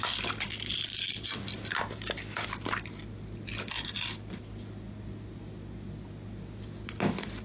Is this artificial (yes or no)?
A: no